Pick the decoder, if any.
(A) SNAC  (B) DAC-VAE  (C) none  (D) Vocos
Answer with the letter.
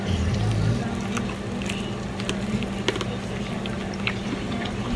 C